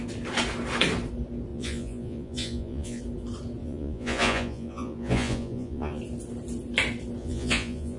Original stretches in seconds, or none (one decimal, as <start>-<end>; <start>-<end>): 0.0-1.5; 3.0-3.6; 6.0-7.2